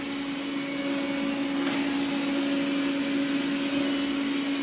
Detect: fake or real real